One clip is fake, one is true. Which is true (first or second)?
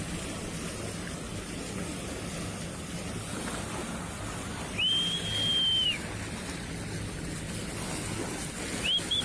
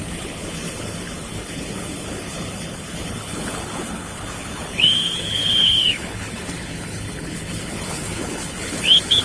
first